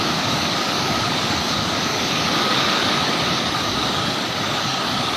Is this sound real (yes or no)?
no